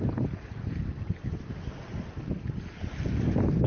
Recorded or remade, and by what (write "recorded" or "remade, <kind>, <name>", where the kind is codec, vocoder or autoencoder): recorded